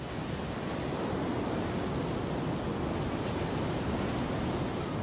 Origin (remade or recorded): recorded